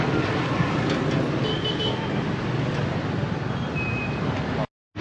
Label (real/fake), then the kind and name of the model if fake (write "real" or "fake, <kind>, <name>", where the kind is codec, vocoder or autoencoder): real